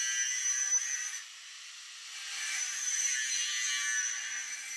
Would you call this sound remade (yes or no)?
no